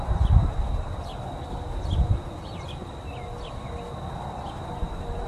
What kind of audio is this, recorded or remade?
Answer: recorded